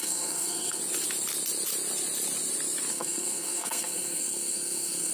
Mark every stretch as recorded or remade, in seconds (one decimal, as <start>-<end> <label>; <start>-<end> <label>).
0.0-0.8 remade; 0.8-2.9 recorded; 2.9-5.1 remade